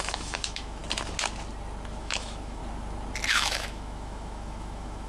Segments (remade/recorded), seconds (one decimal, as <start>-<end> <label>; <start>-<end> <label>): 0.0-0.8 remade; 0.8-2.0 recorded; 2.0-2.6 remade; 2.6-3.3 recorded; 3.3-5.1 remade

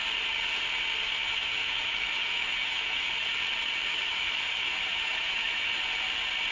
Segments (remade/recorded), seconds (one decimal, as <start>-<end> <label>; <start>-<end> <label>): 0.0-1.0 recorded; 1.0-3.1 remade; 3.1-3.9 recorded; 3.9-5.7 remade; 5.7-6.5 recorded

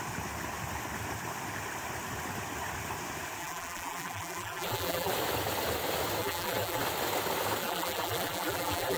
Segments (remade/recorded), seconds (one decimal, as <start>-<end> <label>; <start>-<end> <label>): 0.0-3.4 recorded; 3.4-5.1 remade; 5.1-6.2 recorded; 6.2-6.8 remade; 6.8-7.6 recorded; 7.6-9.0 remade

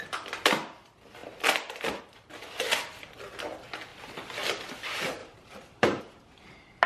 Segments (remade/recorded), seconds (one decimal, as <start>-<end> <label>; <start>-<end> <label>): 0.0-5.2 recorded; 5.2-6.0 remade; 6.0-6.9 recorded

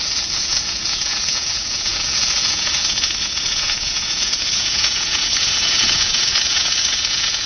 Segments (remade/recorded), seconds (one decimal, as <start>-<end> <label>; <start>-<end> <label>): 0.0-7.5 remade

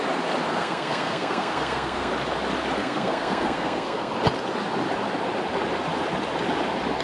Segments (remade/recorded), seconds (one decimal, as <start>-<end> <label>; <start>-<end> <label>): 0.0-0.5 recorded; 0.5-2.1 remade; 2.1-2.8 recorded; 2.8-4.1 remade; 4.1-7.0 recorded

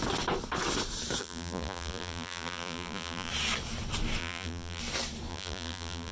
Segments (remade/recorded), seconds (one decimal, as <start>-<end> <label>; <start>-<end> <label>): 0.0-1.2 recorded; 1.2-3.3 remade; 3.3-4.2 recorded; 4.2-4.8 remade; 4.8-5.3 recorded; 5.3-6.1 remade

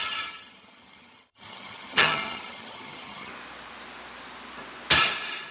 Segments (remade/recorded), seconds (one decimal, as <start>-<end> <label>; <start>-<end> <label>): 0.0-3.3 remade; 3.3-5.5 recorded